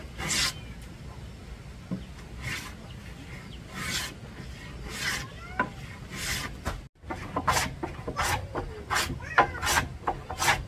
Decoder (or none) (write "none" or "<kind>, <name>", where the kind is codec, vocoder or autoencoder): none